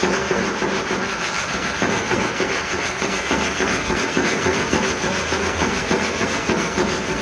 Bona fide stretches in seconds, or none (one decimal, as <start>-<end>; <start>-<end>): 0.4-1.0